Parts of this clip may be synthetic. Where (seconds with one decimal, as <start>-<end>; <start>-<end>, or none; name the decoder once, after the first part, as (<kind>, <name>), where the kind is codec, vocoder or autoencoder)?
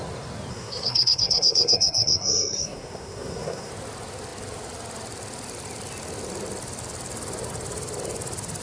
0.5-3.7 (codec, SNAC)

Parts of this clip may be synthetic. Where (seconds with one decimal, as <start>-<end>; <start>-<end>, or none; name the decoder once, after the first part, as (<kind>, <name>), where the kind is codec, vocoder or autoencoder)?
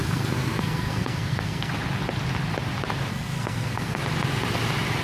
0.0-1.7 (codec, SNAC); 3.1-4.0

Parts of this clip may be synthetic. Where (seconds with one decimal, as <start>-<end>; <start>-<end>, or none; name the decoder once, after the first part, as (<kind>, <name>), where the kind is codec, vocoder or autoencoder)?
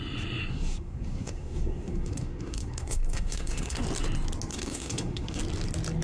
0.5-3.8 (codec, SNAC); 4.5-5.4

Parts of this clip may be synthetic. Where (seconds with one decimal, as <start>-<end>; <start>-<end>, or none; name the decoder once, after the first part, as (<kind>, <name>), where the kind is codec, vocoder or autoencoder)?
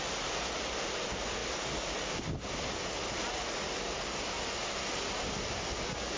none